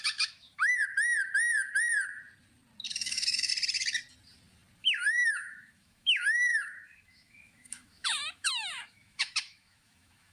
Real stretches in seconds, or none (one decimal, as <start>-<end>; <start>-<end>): 0.7-2.9; 3.5-4.8